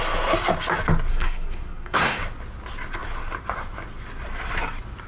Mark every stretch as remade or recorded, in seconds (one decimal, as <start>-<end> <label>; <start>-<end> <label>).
0.0-1.1 recorded; 1.1-2.2 remade; 2.2-5.1 recorded